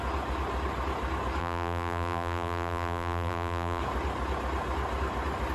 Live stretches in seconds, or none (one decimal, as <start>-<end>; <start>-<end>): 0.0-1.4; 3.8-5.5